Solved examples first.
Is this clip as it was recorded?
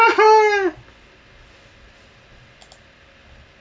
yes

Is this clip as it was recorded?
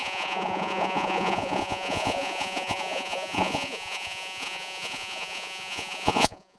no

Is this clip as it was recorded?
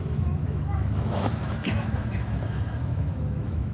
no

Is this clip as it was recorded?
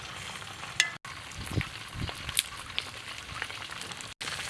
yes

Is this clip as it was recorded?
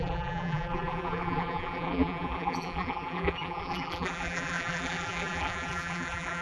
no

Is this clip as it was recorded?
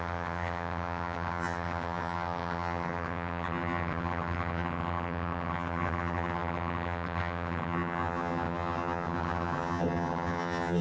no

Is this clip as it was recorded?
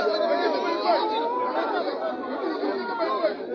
yes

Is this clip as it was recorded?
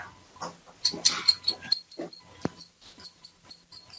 yes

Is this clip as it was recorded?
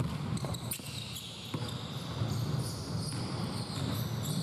yes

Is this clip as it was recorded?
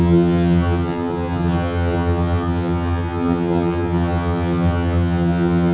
no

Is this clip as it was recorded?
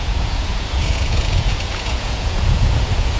no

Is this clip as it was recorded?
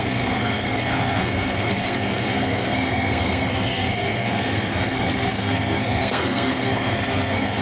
no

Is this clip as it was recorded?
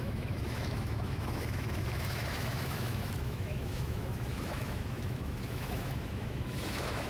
no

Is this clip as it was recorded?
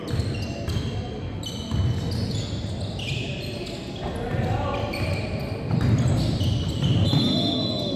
yes